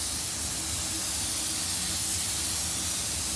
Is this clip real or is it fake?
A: real